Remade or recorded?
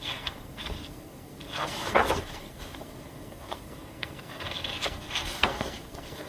remade